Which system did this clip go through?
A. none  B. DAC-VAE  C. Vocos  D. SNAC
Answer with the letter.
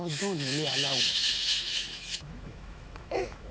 B